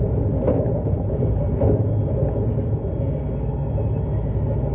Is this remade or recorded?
recorded